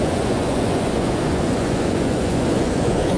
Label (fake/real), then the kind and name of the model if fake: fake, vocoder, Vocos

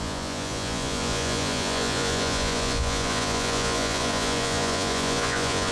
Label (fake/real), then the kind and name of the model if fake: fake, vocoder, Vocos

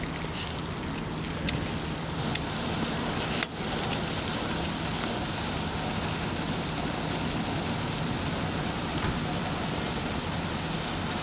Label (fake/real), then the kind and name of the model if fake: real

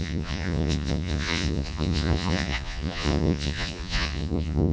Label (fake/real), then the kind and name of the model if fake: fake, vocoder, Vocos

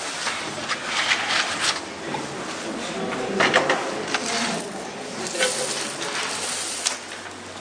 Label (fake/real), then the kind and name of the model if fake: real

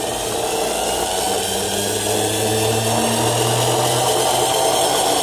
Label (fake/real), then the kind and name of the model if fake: real